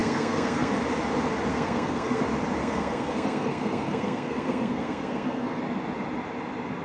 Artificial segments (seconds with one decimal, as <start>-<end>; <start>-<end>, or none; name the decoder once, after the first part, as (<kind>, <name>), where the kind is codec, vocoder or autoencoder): 0.0-0.7 (codec, SNAC); 1.5-2.2; 2.6-5.6